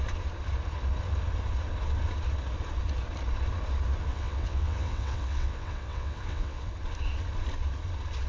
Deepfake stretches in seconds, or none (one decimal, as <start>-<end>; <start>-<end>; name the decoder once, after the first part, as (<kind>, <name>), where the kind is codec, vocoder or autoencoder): 4.1-6.7 (vocoder, WaveNeXt)